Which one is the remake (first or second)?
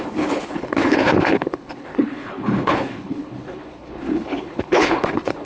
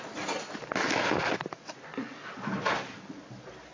first